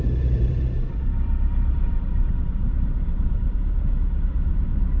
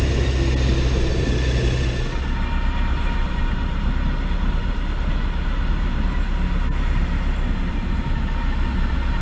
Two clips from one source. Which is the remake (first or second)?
first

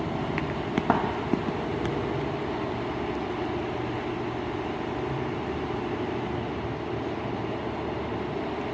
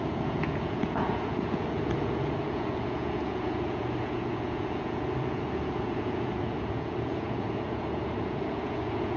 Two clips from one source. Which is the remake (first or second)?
second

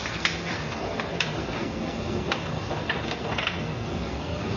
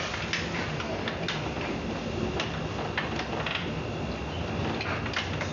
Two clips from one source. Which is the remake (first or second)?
first